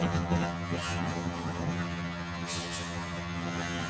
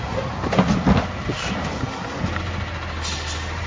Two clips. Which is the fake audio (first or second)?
first